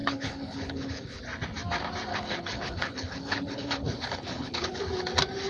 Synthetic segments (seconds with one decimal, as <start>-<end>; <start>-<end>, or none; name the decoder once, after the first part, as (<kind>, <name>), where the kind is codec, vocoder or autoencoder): 0.0-1.2 (codec, HILCodec); 2.1-4.8